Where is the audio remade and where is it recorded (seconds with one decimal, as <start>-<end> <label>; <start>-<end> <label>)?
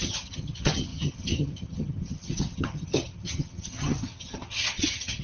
0.0-5.2 remade